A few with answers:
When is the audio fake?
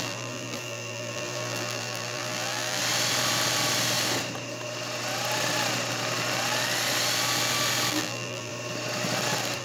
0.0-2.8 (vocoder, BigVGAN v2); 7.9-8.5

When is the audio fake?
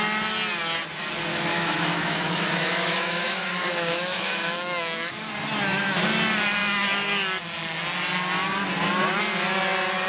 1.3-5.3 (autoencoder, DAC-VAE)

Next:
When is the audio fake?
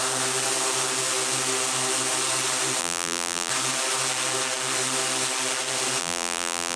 2.8-3.5 (vocoder, BigVGAN v2); 6.0-6.8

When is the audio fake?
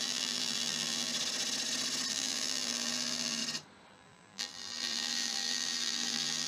0.0-1.1 (vocoder, BigVGAN v2); 2.1-3.4; 3.9-6.5